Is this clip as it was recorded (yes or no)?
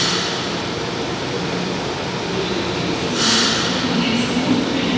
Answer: no